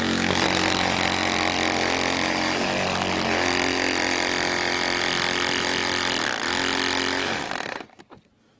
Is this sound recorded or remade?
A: recorded